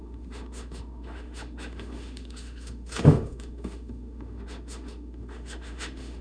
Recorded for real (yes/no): no